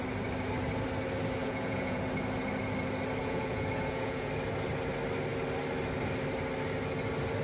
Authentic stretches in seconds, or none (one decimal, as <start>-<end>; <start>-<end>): 0.0-1.4; 2.0-3.2; 4.3-7.4